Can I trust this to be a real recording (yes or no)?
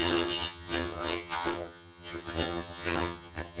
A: no